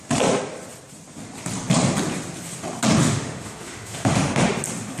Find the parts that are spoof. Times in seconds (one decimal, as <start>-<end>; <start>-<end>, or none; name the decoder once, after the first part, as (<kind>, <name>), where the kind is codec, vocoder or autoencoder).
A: 3.0-4.6 (autoencoder, DAC-VAE)